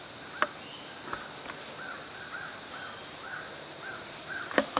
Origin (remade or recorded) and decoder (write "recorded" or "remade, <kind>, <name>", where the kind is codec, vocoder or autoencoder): recorded